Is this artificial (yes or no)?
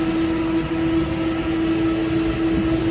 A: no